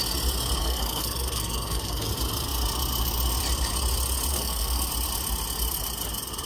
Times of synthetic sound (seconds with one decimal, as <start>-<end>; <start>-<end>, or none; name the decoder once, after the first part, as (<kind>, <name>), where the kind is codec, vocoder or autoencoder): 0.6-2.1 (codec, SNAC); 4.3-4.9